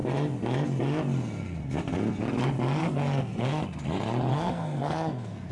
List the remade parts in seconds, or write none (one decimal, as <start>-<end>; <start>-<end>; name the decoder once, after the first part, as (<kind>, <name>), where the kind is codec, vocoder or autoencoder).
2.8-3.6 (codec, SNAC); 4.3-5.5